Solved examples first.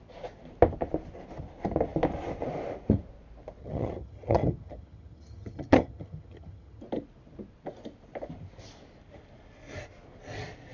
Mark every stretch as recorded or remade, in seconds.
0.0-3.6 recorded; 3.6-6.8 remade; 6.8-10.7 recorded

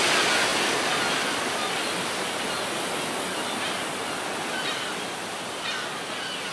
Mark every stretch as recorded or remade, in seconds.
0.0-6.5 recorded

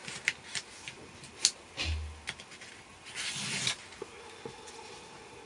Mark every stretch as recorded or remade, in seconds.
0.0-5.5 recorded

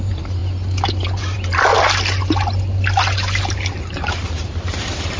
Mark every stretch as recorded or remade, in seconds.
0.0-0.4 remade; 0.4-0.9 recorded; 0.9-1.7 remade; 1.7-3.4 recorded; 3.4-5.2 remade

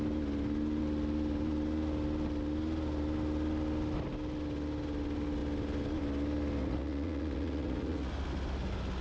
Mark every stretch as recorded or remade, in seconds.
0.0-6.6 recorded; 6.6-8.1 remade; 8.1-9.0 recorded